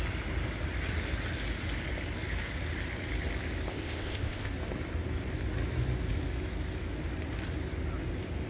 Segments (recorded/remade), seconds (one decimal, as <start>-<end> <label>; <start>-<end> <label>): 0.0-3.7 recorded; 3.7-4.5 remade; 4.5-8.5 recorded